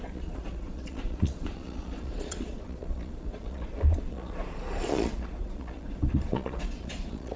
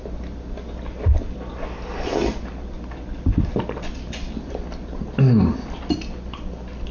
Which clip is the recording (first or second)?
second